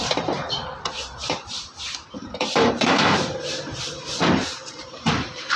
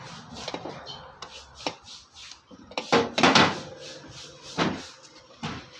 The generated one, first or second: first